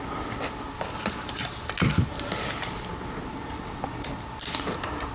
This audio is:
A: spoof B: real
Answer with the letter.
B